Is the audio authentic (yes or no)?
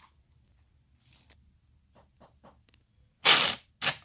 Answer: yes